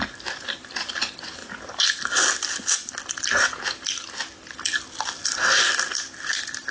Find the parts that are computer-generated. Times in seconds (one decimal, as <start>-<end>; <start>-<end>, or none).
0.0-1.4; 5.4-6.7